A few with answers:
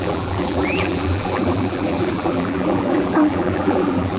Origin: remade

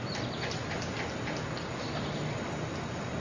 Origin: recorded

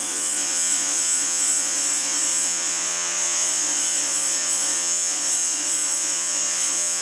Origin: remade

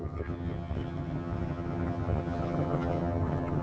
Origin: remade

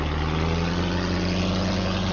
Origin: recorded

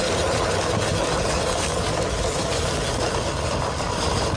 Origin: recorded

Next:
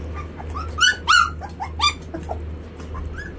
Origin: recorded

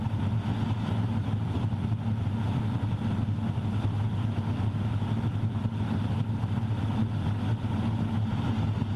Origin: recorded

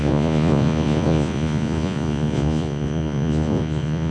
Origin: remade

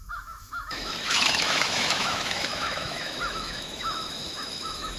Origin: remade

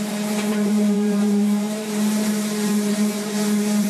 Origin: remade